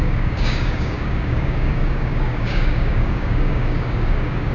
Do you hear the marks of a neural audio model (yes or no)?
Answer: yes